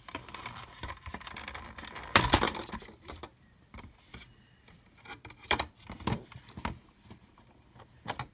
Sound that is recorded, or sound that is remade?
remade